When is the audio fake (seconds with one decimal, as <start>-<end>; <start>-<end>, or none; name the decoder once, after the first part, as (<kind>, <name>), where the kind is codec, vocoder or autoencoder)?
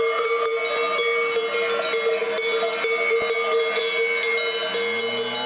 none